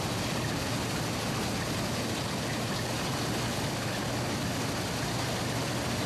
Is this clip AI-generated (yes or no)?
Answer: no